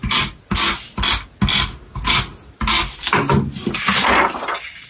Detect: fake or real real